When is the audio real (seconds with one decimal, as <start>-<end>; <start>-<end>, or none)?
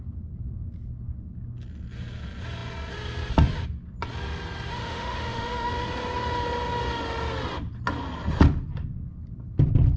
0.0-4.8; 5.7-10.0